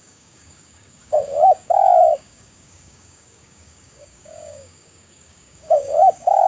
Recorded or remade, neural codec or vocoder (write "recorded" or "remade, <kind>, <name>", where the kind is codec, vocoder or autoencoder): remade, codec, DAC